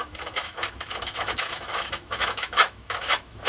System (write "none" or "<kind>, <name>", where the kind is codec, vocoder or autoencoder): autoencoder, DAC-VAE